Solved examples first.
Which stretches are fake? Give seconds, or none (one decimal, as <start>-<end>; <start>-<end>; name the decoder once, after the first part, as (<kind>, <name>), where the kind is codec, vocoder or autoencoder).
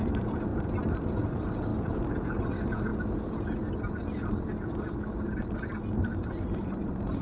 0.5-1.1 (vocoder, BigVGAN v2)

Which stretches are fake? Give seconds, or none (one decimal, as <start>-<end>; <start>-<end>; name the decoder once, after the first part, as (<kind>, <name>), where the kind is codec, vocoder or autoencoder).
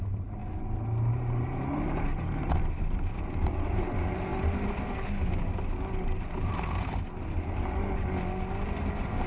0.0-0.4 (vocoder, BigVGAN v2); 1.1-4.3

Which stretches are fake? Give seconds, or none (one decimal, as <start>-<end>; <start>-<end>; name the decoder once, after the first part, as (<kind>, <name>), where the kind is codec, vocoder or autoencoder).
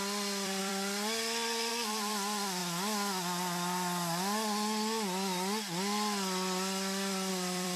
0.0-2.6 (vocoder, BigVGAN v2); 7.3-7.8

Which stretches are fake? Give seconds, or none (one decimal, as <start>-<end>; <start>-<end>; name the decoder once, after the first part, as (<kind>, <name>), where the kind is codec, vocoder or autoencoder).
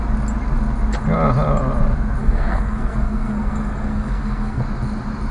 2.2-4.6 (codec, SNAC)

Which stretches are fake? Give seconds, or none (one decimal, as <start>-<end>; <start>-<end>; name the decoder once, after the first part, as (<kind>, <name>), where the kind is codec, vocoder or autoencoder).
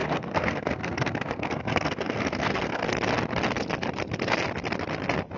0.0-2.8 (codec, SNAC)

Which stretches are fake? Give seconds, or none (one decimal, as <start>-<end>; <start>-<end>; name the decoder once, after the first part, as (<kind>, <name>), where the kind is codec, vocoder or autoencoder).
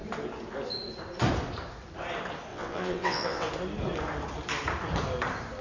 2.5-3.5 (vocoder, WaveNeXt)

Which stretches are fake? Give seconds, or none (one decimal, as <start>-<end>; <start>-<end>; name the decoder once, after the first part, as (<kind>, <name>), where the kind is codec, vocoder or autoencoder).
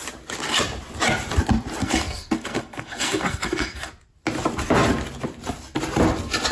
1.8-3.9 (codec, SNAC)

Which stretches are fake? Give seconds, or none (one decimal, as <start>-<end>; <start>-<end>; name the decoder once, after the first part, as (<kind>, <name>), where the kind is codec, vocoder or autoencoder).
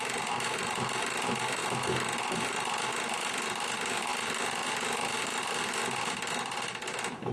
none